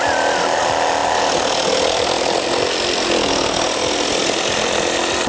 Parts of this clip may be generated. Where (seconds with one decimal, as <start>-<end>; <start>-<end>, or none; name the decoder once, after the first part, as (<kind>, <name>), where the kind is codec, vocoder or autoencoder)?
none